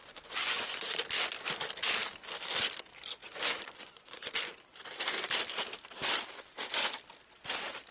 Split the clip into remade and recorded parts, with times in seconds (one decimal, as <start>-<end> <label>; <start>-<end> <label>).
0.0-1.0 remade; 1.0-3.2 recorded; 3.2-4.5 remade; 4.5-7.9 recorded